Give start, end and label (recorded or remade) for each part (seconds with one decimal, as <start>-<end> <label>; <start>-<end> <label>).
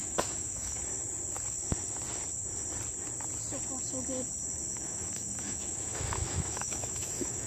0.0-0.8 remade; 0.8-4.7 recorded; 4.7-7.5 remade